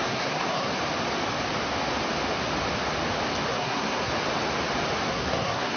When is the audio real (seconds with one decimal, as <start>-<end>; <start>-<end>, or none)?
0.7-3.5; 4.1-5.1